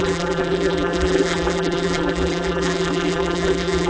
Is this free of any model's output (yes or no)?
no